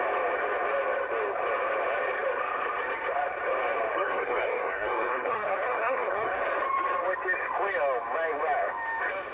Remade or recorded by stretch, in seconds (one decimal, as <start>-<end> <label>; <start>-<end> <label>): 0.0-3.9 recorded; 3.9-6.4 remade; 6.4-9.3 recorded